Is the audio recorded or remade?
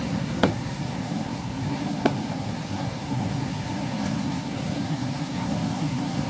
remade